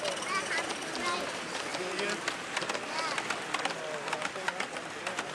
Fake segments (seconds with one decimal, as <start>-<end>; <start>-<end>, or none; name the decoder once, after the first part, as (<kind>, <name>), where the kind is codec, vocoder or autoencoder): 1.7-3.6 (vocoder, BigVGAN v2)